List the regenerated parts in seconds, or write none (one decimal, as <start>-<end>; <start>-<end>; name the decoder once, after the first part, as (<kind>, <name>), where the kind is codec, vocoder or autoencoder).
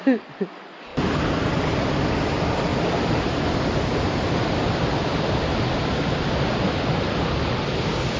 2.7-4.1 (vocoder, BigVGAN v2)